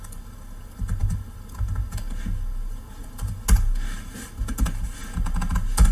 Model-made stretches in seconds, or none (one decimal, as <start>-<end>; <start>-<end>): none